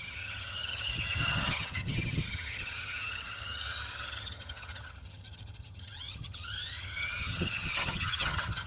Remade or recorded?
remade